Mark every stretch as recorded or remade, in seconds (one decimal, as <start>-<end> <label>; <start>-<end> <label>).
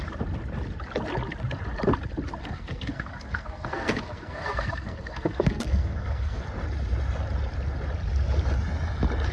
0.0-2.4 recorded; 2.4-6.4 remade; 6.4-9.3 recorded